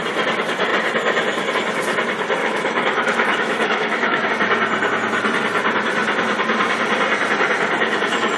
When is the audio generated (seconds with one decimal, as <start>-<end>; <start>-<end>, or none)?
2.4-4.3